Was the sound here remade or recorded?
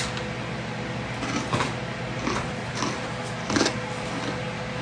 recorded